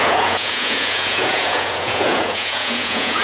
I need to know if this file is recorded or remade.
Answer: remade